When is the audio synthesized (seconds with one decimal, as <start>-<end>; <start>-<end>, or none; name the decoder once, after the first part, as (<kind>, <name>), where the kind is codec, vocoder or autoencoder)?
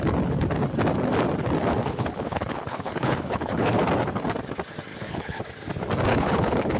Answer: 1.8-3.8 (codec, HILCodec); 4.9-5.4; 6.1-6.8